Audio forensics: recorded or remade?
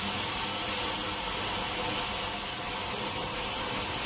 recorded